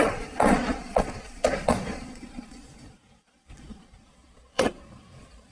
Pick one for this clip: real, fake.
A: fake